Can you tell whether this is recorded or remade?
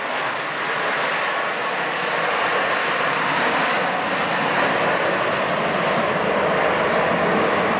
recorded